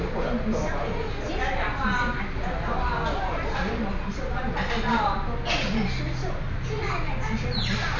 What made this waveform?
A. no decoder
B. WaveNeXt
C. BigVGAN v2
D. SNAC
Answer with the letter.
A